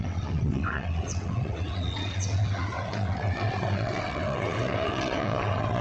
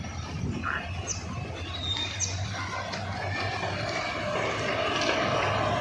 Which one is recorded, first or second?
second